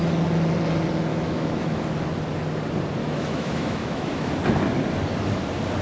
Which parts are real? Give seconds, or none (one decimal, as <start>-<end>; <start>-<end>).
0.0-1.1; 1.8-3.0; 4.3-5.8